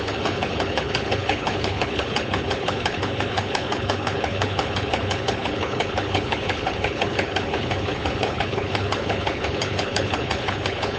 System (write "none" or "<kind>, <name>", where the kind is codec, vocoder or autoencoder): codec, HILCodec